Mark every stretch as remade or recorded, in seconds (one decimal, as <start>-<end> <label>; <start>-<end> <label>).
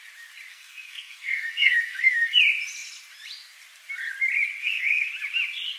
0.0-0.5 recorded; 0.5-2.4 remade; 2.4-4.6 recorded; 4.6-5.1 remade; 5.1-5.8 recorded